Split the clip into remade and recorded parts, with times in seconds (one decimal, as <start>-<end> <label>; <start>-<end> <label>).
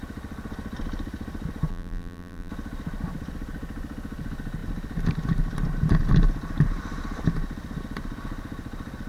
0.0-1.7 recorded; 1.7-2.5 remade; 2.5-9.1 recorded